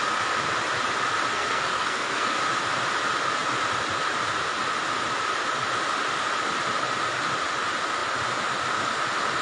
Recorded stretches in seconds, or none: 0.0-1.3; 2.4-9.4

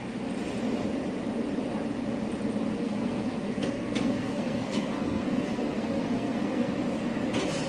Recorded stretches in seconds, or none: 0.0-2.8; 6.7-7.7

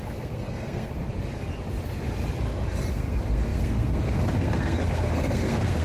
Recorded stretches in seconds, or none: 1.0-2.9

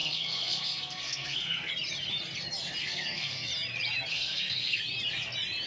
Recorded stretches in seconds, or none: 1.7-2.8; 3.5-4.1; 4.8-5.7

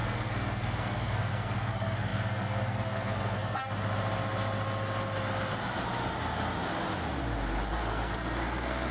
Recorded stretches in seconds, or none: 3.6-7.7

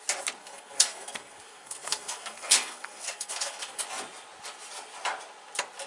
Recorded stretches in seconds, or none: 0.0-0.4; 3.8-5.9